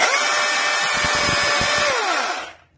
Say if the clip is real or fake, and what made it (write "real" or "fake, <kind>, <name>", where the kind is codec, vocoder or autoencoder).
real